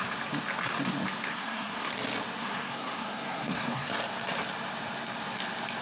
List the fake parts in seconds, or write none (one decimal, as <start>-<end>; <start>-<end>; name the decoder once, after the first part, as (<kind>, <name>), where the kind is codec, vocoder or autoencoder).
1.3-1.9 (codec, SNAC); 2.4-3.9